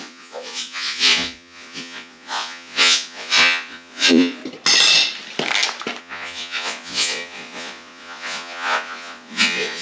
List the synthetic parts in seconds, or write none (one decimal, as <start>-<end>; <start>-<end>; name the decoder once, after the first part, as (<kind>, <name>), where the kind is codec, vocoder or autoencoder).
0.0-4.4 (vocoder, Vocos); 6.0-9.8